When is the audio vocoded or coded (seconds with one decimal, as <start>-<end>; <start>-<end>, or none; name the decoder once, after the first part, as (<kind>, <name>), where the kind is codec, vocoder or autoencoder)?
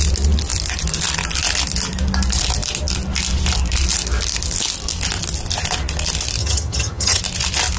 6.4-7.2 (vocoder, HiFi-GAN)